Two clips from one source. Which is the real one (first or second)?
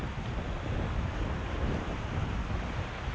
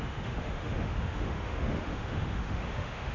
first